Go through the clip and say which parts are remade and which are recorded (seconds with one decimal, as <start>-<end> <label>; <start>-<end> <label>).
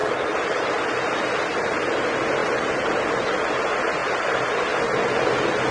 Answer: 0.0-0.7 remade; 0.7-2.4 recorded; 2.4-3.1 remade; 3.1-5.7 recorded